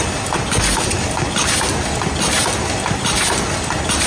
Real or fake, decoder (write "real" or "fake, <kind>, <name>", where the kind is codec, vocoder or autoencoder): real